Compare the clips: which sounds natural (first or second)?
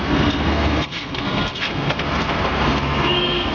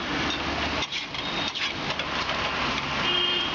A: second